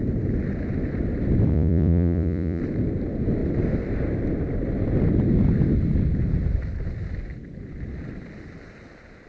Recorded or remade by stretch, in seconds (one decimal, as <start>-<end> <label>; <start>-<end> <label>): 0.0-1.5 recorded; 1.5-2.6 remade; 2.6-9.3 recorded